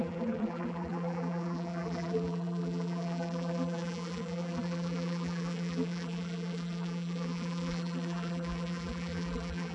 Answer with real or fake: fake